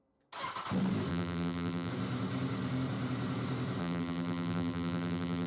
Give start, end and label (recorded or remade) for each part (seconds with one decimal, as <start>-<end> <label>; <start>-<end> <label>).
0.0-1.1 recorded; 1.1-1.9 remade; 1.9-3.8 recorded; 3.8-5.5 remade